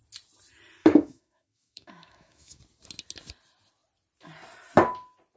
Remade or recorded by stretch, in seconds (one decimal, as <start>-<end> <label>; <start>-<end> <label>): 0.0-0.8 recorded; 0.8-2.6 remade; 2.6-5.4 recorded